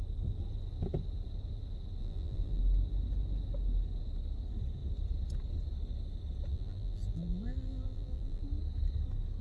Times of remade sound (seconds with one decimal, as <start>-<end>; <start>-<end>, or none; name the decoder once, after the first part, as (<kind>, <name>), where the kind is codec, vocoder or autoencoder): 2.0-2.6 (vocoder, BigVGAN v2); 6.5-8.4